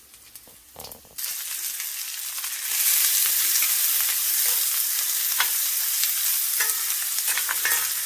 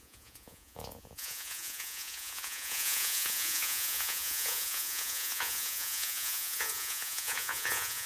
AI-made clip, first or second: second